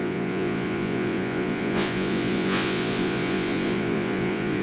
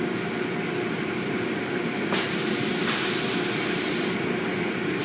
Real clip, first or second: second